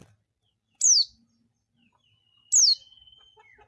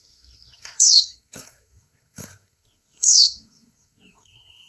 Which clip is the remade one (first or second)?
second